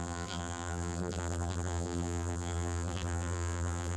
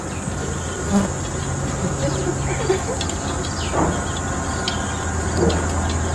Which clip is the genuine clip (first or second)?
second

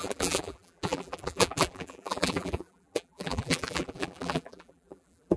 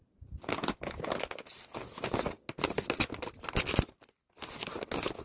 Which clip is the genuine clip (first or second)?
second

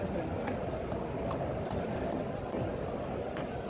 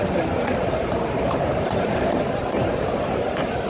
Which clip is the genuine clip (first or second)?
first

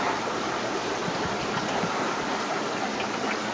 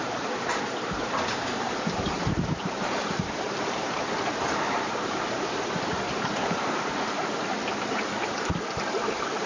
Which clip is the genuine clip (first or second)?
first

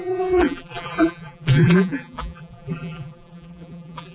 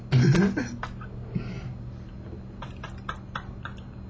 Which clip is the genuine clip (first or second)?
second